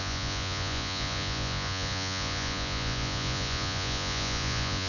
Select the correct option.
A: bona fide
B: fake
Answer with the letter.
B